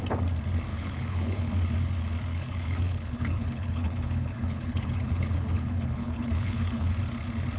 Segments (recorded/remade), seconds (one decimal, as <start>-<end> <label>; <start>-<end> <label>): 0.0-0.7 recorded; 0.7-1.5 remade; 1.5-2.3 recorded; 2.3-6.9 remade; 6.9-7.6 recorded

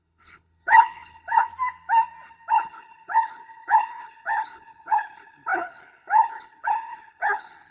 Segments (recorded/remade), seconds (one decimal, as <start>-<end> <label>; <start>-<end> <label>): 0.0-1.5 remade; 1.5-2.5 recorded; 2.5-7.7 remade

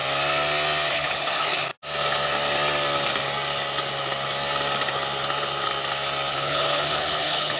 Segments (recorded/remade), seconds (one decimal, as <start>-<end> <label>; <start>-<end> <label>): 0.0-0.9 recorded; 0.9-1.7 remade; 1.7-6.3 recorded; 6.3-7.6 remade

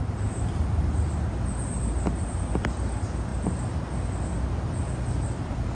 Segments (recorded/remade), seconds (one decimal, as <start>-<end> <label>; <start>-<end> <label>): 0.0-5.7 recorded

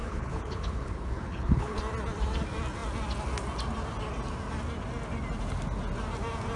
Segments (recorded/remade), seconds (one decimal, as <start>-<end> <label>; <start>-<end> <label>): 0.0-1.8 remade; 1.8-6.6 recorded